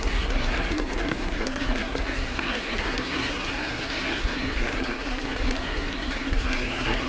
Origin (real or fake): fake